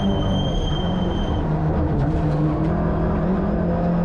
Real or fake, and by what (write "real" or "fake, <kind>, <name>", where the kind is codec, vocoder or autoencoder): fake, vocoder, BigVGAN v2